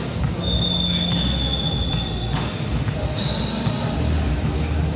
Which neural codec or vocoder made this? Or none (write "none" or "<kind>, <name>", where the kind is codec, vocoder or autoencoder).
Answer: none